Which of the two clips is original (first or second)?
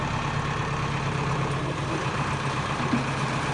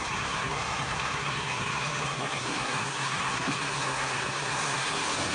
first